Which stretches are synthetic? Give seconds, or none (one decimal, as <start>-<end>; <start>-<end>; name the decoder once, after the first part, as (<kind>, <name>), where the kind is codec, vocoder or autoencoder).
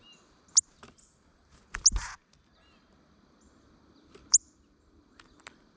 none